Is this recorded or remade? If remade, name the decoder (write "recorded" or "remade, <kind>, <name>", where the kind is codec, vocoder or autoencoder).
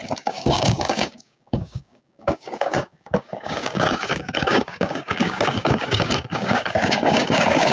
remade, codec, DAC